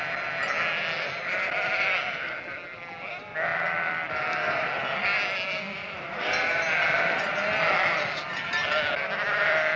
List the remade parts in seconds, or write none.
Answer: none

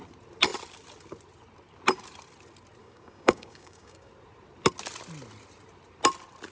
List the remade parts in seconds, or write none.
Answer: 2.8-4.1 (codec, DAC)

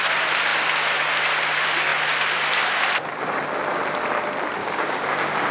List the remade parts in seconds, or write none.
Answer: 4.6-5.5 (codec, DAC)

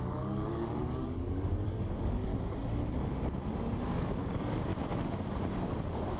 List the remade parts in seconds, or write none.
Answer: 0.0-2.3 (codec, DAC); 3.7-4.7; 5.6-6.2

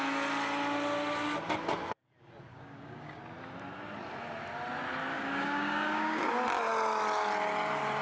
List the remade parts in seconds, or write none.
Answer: 2.5-3.2 (codec, DAC); 5.1-6.2

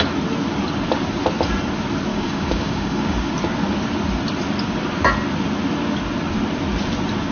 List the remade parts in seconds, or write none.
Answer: 2.1-3.3 (codec, DAC)

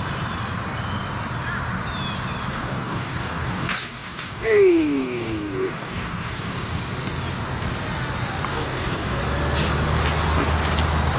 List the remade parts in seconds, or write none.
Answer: 2.5-6.8 (codec, DAC); 8.5-9.2

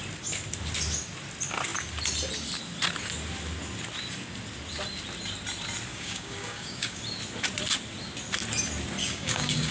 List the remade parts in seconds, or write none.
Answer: 5.9-7.0 (codec, DAC); 9.0-9.7